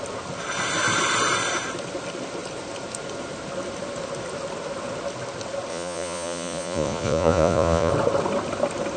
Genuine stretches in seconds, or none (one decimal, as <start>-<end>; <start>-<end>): 0.0-5.7; 7.9-9.0